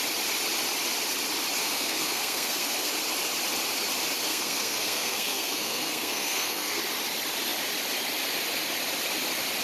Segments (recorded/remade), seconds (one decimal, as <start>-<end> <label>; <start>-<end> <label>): 0.0-1.6 recorded; 1.6-2.9 remade; 2.9-4.3 recorded; 4.3-6.8 remade; 6.8-9.6 recorded